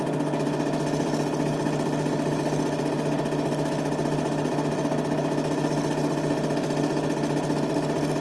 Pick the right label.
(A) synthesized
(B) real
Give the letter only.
B